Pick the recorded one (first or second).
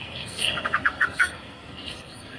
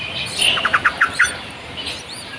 second